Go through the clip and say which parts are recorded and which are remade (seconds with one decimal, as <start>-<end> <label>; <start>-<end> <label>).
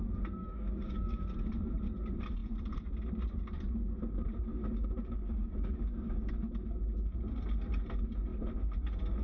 0.0-0.4 recorded; 0.4-1.2 remade; 1.2-4.5 recorded; 4.5-6.3 remade; 6.3-9.2 recorded